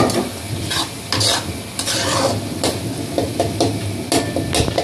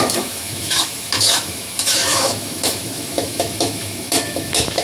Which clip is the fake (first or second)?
second